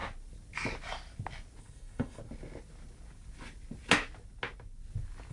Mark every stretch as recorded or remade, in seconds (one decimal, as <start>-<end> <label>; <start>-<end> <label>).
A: 0.0-1.6 recorded; 1.6-2.2 remade; 2.2-5.3 recorded